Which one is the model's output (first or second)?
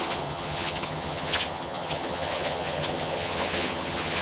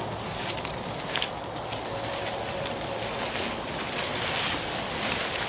first